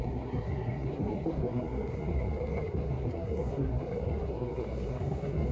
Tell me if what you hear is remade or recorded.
remade